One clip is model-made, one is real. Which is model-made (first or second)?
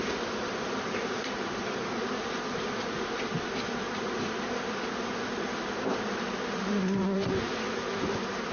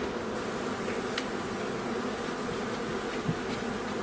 first